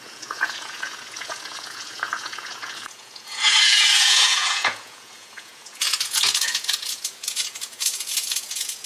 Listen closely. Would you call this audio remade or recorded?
remade